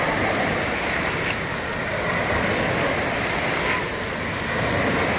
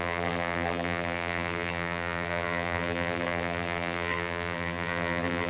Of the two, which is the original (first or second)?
first